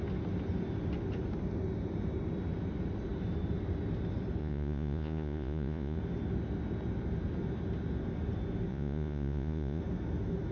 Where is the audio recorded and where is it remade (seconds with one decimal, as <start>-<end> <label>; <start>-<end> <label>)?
0.0-4.4 recorded; 4.4-6.0 remade; 6.0-8.7 recorded; 8.7-9.8 remade; 9.8-10.5 recorded

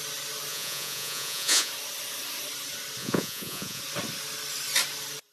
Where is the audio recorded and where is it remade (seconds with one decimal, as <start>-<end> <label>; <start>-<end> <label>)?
0.0-0.5 recorded; 0.5-1.7 remade; 1.7-3.0 recorded; 3.0-3.8 remade; 3.8-5.3 recorded

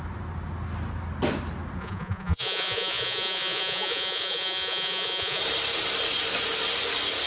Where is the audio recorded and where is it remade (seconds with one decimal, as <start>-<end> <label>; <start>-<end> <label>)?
0.0-1.8 recorded; 1.8-5.4 remade; 5.4-7.3 recorded